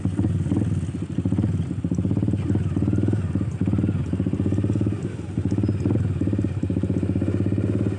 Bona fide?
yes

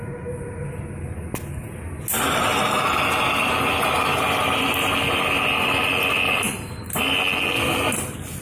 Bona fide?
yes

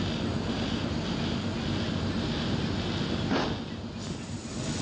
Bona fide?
yes